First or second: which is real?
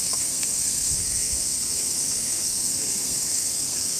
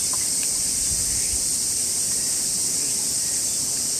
second